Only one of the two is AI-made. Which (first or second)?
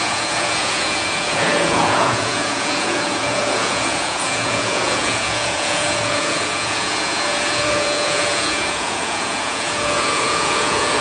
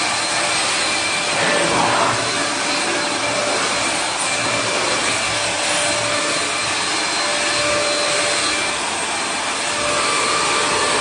first